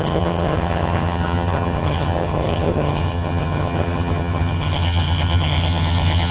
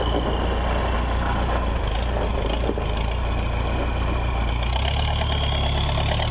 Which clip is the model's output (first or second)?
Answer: first